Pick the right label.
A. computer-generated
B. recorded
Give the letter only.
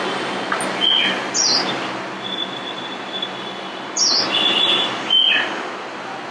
B